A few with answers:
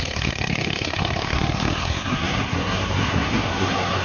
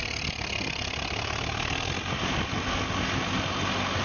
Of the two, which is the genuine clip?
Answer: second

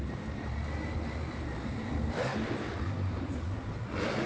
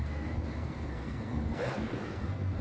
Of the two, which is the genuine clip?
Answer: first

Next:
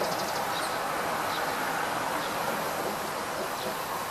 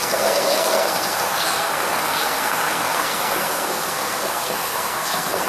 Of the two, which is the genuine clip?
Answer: first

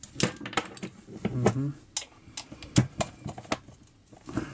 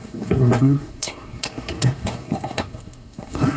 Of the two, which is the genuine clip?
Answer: first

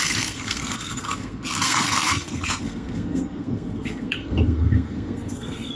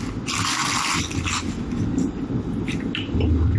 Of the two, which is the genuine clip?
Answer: second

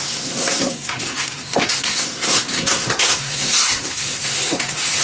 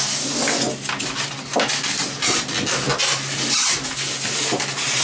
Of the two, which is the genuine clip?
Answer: second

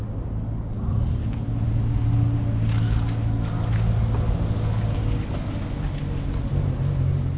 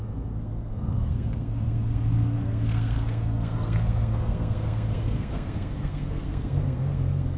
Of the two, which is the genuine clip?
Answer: first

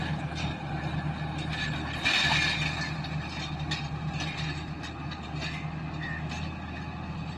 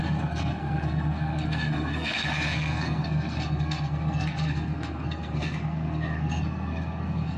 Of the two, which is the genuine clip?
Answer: first